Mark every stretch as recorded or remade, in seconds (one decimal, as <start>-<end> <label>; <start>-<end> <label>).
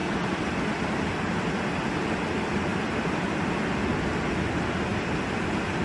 0.0-2.7 recorded; 2.7-3.7 remade; 3.7-5.8 recorded